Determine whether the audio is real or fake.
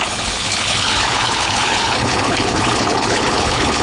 fake